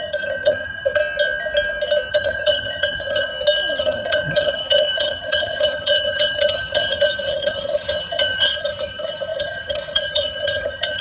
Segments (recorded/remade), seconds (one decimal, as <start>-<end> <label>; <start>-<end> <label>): 0.0-1.0 remade; 1.0-2.1 recorded; 2.1-3.3 remade; 3.3-3.8 recorded; 3.8-11.0 remade